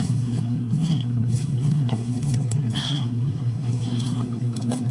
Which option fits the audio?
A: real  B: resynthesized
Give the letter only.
B